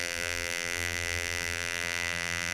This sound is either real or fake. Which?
fake